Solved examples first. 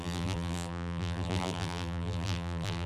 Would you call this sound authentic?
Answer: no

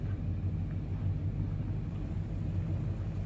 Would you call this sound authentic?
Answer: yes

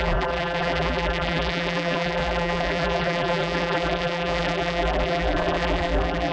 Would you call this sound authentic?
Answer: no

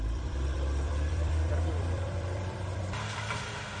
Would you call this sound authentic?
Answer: no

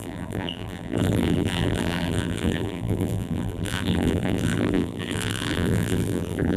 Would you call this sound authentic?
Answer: no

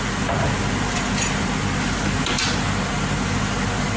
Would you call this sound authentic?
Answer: yes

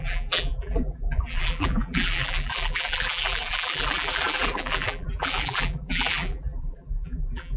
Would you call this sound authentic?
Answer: no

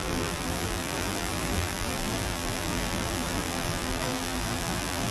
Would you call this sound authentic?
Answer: no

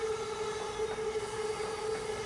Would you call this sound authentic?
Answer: yes